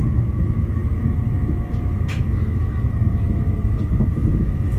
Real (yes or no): no